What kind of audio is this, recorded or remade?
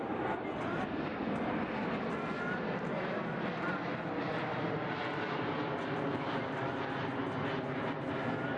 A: recorded